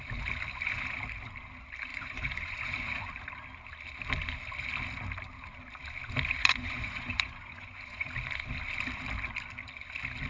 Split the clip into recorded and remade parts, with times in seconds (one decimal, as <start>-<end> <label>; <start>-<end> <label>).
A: 0.0-1.9 recorded; 1.9-3.1 remade; 3.1-6.4 recorded; 6.4-8.1 remade; 8.1-10.3 recorded